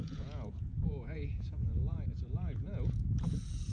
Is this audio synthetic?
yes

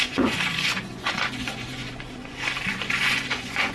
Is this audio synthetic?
yes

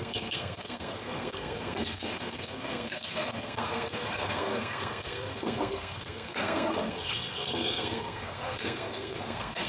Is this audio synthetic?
yes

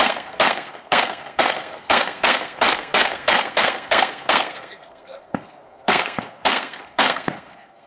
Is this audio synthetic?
yes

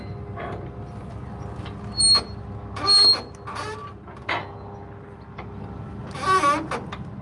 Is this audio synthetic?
no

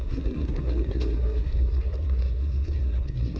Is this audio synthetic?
yes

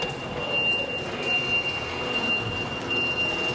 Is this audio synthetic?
no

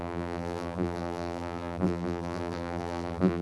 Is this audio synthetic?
yes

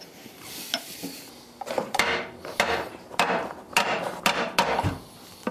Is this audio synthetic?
no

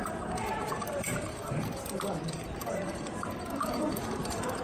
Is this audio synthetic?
yes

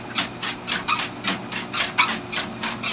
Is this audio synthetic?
no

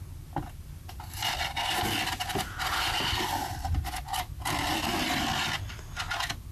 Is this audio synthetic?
no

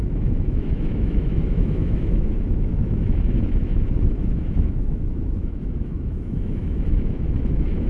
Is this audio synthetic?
yes